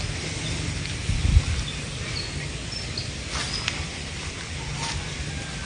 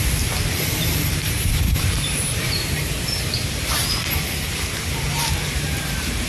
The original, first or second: first